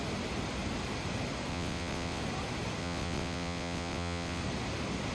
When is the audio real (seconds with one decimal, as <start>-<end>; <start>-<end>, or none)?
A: 0.0-1.5; 2.2-2.8; 4.4-5.1